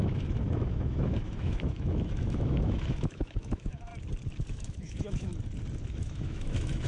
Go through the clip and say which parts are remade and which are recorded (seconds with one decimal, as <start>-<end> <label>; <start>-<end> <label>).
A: 0.0-3.9 remade; 3.9-4.5 recorded; 4.5-5.3 remade; 5.3-5.9 recorded; 5.9-6.9 remade